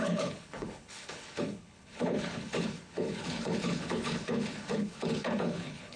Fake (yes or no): yes